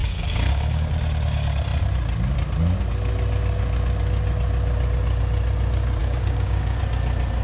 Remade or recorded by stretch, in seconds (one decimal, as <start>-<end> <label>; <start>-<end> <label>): 0.0-0.9 remade; 0.9-6.0 recorded; 6.0-6.8 remade; 6.8-7.4 recorded